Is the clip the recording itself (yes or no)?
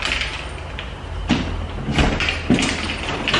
yes